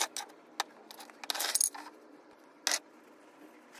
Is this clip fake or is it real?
real